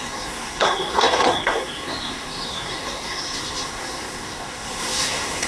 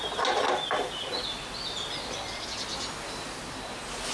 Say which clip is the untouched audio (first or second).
second